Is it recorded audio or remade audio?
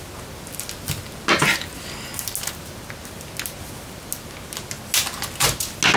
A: recorded